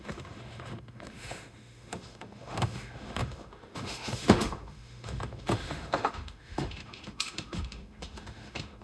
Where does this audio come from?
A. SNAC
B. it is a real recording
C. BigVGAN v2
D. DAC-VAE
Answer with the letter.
D